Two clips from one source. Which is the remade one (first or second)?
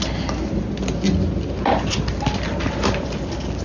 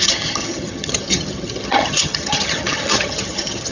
second